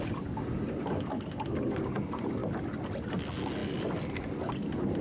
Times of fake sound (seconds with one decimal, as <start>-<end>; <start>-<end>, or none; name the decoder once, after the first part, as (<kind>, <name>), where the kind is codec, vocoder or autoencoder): none